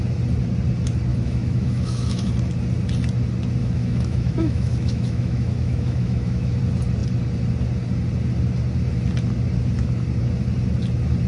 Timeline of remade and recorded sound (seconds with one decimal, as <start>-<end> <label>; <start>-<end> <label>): 0.0-1.1 recorded; 1.1-2.3 remade; 2.3-3.6 recorded; 3.6-6.6 remade; 6.6-11.3 recorded